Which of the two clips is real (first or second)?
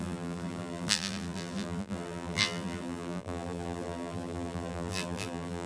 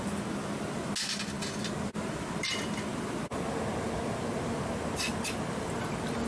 second